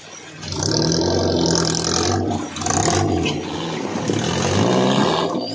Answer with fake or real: real